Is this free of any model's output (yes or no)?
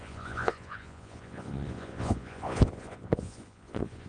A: no